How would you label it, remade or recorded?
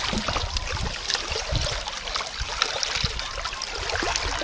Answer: recorded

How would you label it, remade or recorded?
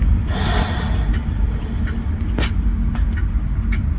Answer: recorded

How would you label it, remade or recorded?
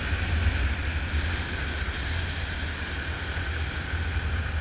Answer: recorded